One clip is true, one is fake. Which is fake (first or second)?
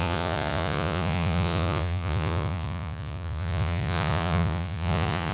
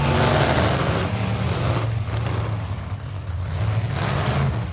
first